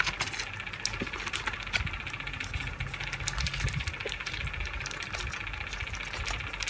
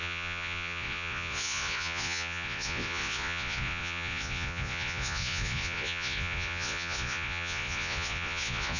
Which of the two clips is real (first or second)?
first